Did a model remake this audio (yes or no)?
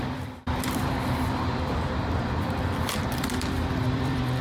yes